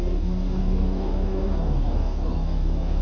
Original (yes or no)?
no